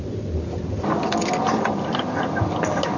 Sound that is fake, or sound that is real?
real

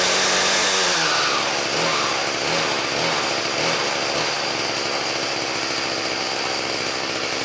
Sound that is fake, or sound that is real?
real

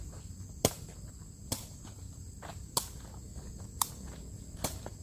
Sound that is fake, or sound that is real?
real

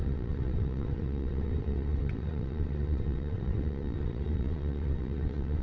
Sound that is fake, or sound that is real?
fake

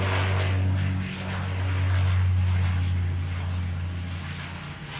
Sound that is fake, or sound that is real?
real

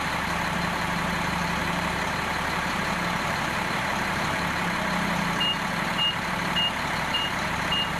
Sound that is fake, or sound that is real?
fake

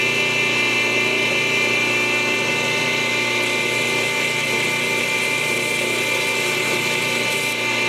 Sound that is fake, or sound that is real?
real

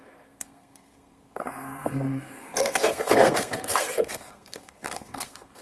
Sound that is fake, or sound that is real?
fake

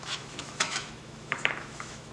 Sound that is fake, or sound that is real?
fake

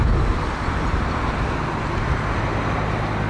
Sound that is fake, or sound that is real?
real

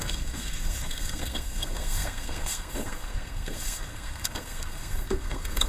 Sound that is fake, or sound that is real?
fake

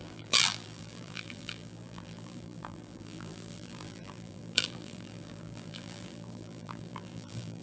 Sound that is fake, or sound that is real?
fake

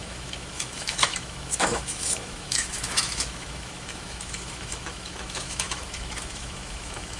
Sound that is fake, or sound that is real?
fake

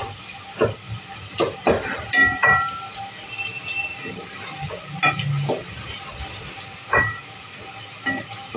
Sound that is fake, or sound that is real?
real